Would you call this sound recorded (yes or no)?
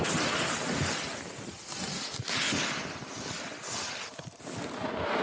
yes